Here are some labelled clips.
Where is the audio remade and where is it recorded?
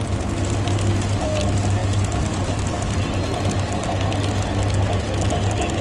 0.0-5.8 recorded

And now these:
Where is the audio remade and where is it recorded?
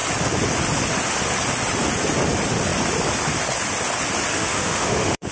0.0-4.3 recorded; 4.3-5.3 remade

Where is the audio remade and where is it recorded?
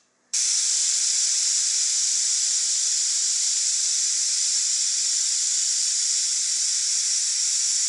0.0-7.9 remade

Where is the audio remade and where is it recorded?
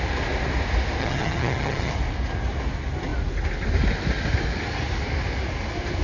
0.0-1.0 recorded; 1.0-1.9 remade; 1.9-6.0 recorded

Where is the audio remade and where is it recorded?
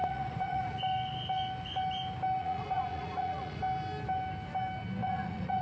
0.0-0.8 remade; 0.8-2.4 recorded; 2.4-3.6 remade; 3.6-5.0 recorded; 5.0-5.6 remade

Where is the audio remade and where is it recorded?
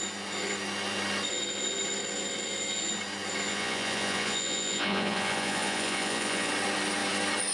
0.0-3.5 recorded; 3.5-6.5 remade; 6.5-7.5 recorded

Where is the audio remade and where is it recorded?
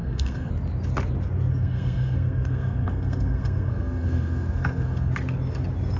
0.0-0.5 remade; 0.5-1.5 recorded; 1.5-5.1 remade; 5.1-6.0 recorded